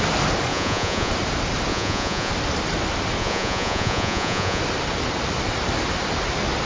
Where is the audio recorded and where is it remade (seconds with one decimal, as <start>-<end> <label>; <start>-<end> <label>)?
0.0-0.5 recorded; 0.5-1.1 remade; 1.1-1.7 recorded; 1.7-2.3 remade; 2.3-3.2 recorded; 3.2-4.6 remade; 4.6-6.7 recorded